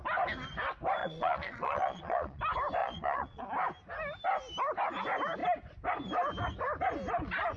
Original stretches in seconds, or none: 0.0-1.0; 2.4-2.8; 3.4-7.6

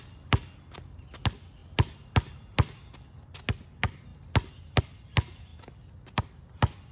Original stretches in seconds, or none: 0.0-6.9

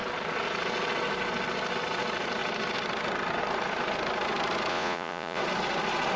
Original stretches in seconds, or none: 0.0-4.7; 5.4-6.2

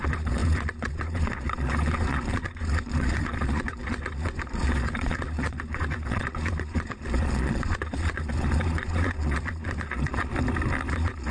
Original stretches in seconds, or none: 10.3-10.9

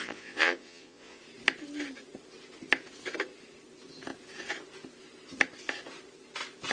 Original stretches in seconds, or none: 1.2-6.7

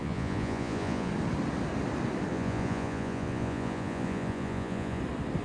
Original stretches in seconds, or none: 1.1-2.3; 5.0-5.4

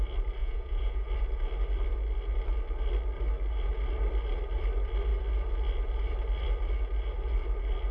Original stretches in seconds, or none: 0.0-0.4; 1.1-7.9

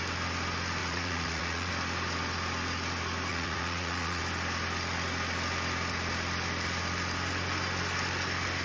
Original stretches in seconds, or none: 0.0-0.8; 1.7-3.3; 4.2-8.6